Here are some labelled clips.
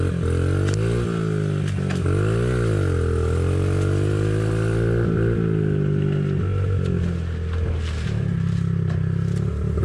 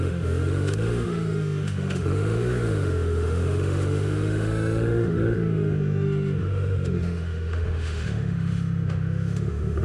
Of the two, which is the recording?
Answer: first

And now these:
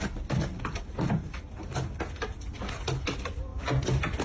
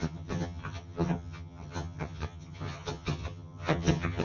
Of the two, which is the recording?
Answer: first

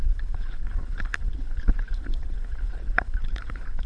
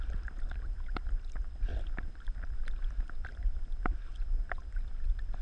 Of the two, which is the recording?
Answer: second